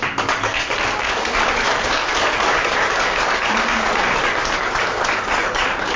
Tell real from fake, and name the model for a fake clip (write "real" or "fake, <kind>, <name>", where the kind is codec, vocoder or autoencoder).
fake, codec, DAC